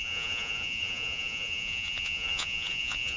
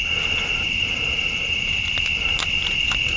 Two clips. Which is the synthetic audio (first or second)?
first